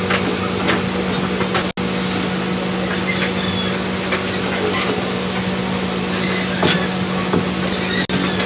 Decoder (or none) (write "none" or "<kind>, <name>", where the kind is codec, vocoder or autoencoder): none